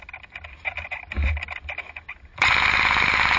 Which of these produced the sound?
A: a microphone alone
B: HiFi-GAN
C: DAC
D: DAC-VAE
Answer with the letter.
A